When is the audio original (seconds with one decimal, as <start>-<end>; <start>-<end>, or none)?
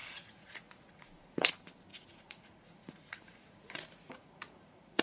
1.5-1.9